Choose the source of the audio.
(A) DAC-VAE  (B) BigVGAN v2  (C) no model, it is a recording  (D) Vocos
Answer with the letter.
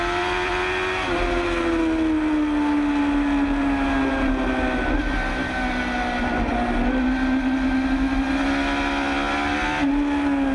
C